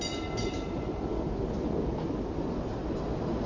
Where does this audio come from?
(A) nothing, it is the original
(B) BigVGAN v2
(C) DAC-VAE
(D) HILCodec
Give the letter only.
A